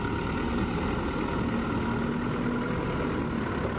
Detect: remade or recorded recorded